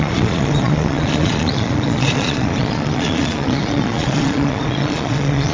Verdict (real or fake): fake